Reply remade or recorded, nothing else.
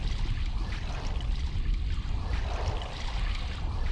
recorded